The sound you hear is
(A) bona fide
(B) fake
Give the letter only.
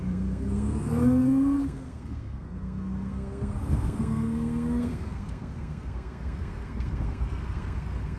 B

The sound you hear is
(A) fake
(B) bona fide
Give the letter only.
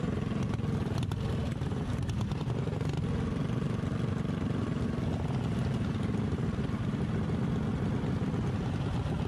B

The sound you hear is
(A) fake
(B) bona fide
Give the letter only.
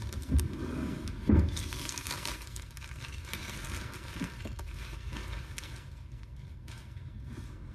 A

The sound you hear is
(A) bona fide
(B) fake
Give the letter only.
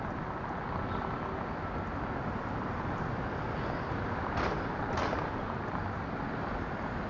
A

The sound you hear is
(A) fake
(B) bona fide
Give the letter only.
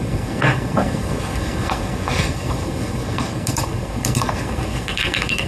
A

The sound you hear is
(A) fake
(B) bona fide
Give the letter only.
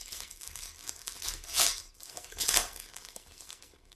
A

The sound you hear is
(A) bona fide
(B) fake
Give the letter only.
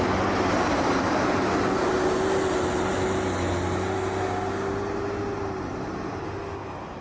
A